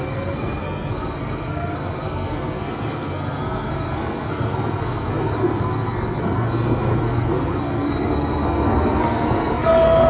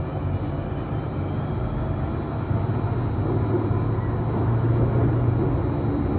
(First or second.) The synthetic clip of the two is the first